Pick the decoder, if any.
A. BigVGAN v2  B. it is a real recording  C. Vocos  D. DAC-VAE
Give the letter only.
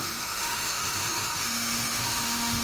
D